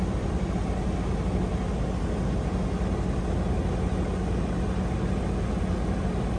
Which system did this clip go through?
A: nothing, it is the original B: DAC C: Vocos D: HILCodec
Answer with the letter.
A